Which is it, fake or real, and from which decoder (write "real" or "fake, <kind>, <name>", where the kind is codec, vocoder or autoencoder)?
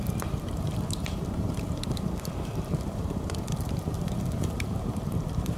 fake, vocoder, BigVGAN v2